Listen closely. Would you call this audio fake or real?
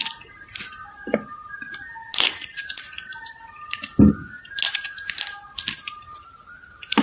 real